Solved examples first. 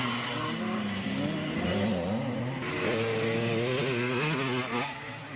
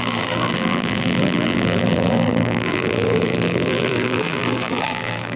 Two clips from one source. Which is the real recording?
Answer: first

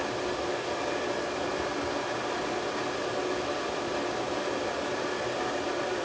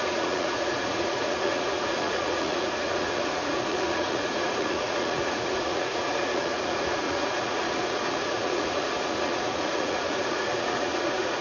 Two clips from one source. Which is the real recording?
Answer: first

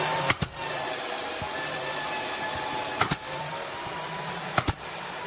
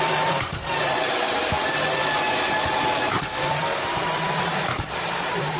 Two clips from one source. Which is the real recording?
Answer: first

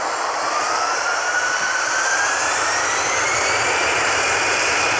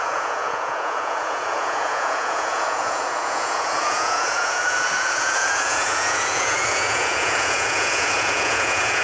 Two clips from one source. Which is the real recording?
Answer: first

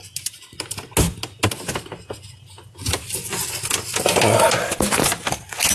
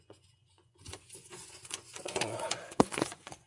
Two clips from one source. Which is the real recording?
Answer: first